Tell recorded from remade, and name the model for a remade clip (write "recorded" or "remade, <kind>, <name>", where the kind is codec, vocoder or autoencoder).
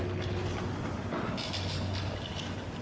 recorded